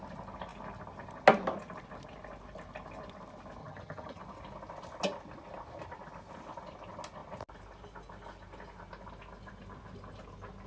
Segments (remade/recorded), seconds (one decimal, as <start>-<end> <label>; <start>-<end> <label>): 0.0-3.6 recorded; 3.6-4.2 remade; 4.2-10.7 recorded